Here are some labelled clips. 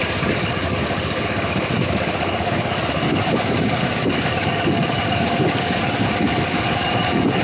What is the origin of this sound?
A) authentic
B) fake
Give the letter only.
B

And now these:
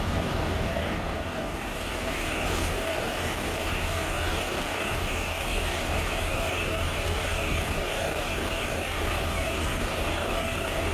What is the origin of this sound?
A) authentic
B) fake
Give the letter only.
B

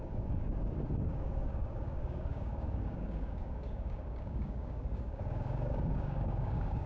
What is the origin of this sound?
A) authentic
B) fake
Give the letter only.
B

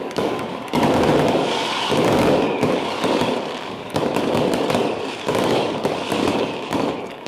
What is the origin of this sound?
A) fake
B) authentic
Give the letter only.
A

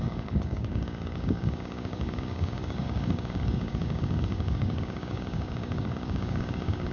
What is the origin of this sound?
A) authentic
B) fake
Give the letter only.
B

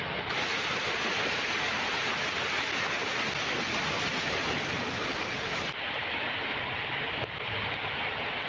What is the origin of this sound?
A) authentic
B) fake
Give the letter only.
A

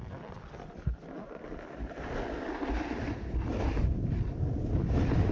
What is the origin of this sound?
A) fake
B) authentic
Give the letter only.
B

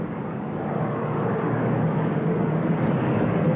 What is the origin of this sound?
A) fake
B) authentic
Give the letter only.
A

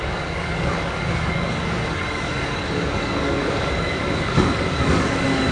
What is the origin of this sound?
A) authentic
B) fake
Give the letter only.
B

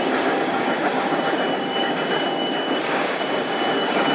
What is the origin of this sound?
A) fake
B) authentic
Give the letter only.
A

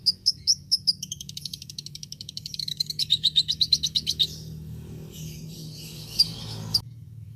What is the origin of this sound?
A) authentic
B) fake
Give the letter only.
B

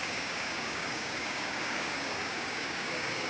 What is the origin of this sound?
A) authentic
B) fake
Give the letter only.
B